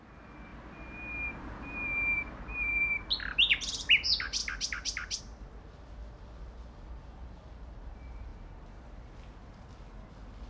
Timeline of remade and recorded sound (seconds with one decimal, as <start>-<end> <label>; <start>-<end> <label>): 0.0-10.5 recorded